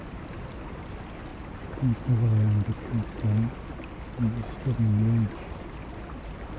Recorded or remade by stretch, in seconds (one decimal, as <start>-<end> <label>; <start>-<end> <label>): 0.0-6.6 recorded